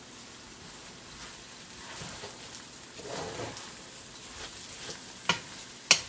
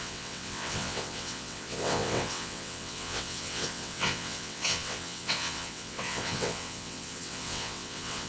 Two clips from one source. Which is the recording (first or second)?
first